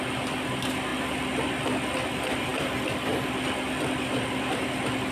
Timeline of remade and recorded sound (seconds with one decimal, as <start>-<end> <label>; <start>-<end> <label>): 0.0-0.9 recorded; 0.9-1.5 remade; 1.5-5.1 recorded